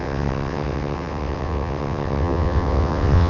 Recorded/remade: remade